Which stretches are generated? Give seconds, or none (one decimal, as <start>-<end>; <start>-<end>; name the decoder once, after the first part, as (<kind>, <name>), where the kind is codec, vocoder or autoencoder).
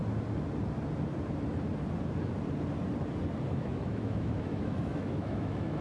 3.5-5.8 (autoencoder, DAC-VAE)